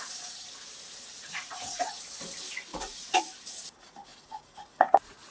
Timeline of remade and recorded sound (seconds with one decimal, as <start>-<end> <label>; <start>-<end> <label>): 0.0-1.1 recorded; 1.1-1.9 remade; 1.9-2.7 recorded; 2.7-3.2 remade; 3.2-4.1 recorded; 4.1-5.3 remade